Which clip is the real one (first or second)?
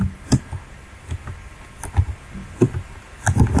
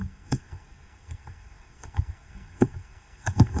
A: first